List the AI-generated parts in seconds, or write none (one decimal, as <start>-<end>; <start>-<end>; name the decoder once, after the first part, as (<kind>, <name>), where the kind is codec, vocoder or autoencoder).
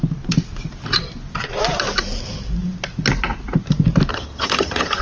4.1-5.0 (vocoder, HiFi-GAN)